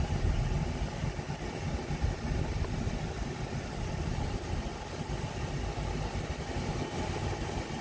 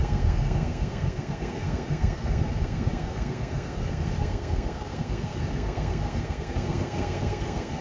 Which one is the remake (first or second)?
second